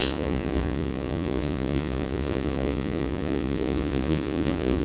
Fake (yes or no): yes